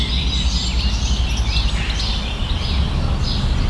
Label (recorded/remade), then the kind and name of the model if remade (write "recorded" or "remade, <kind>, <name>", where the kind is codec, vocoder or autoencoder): recorded